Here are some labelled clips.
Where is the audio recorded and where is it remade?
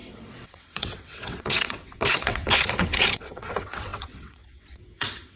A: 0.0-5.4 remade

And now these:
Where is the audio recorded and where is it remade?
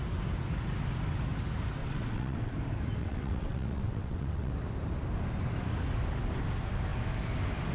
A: 0.0-1.8 recorded; 1.8-2.5 remade; 2.5-3.0 recorded; 3.0-4.5 remade; 4.5-7.7 recorded